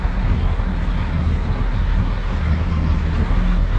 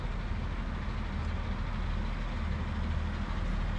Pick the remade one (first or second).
first